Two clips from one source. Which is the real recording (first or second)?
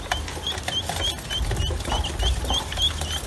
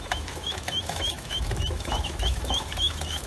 first